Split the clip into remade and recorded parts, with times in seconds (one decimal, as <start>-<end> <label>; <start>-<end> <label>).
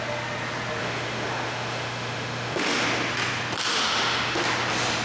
0.0-0.8 recorded; 0.8-2.8 remade; 2.8-3.7 recorded; 3.7-4.4 remade; 4.4-5.0 recorded